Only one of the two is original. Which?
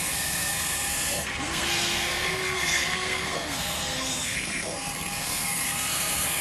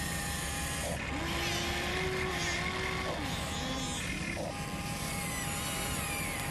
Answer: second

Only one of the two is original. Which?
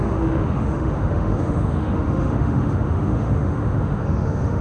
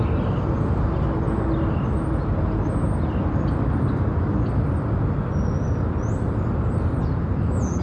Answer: second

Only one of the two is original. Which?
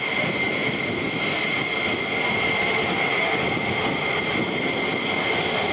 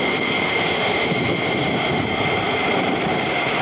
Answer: first